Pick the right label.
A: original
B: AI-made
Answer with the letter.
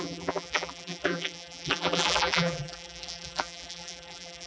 B